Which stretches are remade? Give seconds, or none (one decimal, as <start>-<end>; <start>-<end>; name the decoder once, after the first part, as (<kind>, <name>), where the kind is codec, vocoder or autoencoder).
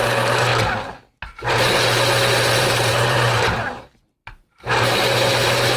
0.0-0.5 (vocoder, BigVGAN v2); 2.6-5.8